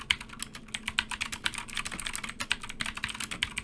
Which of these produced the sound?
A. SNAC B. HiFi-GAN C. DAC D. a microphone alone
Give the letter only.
D